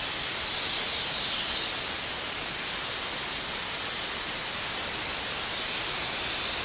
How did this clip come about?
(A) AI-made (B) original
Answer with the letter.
B